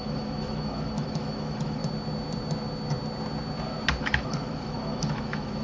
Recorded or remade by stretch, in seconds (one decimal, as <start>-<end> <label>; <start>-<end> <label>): 0.0-1.8 remade; 1.8-4.0 recorded; 4.0-5.6 remade